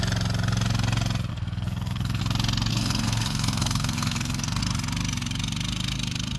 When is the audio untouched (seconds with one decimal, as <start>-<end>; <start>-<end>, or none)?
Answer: 0.0-1.3; 2.2-2.7; 4.6-6.4